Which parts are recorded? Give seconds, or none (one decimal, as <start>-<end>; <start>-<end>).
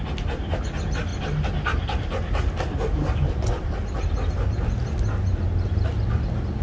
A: 0.0-6.6